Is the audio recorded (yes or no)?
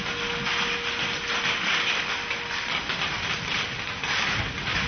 yes